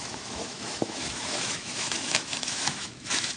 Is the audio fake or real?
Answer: fake